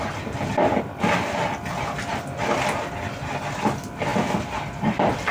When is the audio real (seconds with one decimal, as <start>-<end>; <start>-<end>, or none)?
0.0-5.3